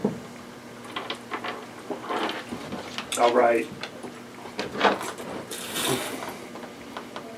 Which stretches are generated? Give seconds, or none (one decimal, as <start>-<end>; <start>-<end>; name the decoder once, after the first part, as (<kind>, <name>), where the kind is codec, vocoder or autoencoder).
none